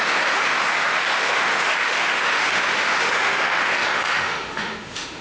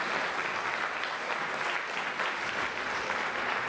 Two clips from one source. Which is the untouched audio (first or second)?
second